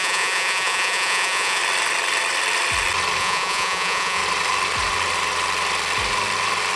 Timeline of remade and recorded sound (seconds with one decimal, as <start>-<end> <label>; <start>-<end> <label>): 0.0-1.6 remade; 1.6-3.2 recorded; 3.2-4.2 remade; 4.2-6.8 recorded